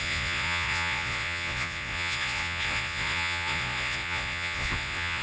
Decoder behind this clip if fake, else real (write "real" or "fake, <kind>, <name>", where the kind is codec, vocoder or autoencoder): fake, vocoder, Vocos